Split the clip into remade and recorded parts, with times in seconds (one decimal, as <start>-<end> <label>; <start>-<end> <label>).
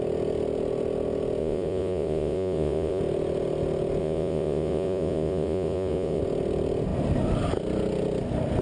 0.0-1.4 recorded; 1.4-3.0 remade; 3.0-4.0 recorded; 4.0-6.2 remade; 6.2-8.6 recorded